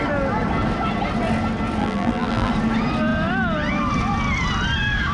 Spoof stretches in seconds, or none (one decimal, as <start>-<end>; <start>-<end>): 1.8-2.5